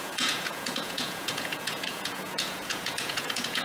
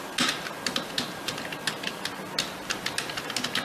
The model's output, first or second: first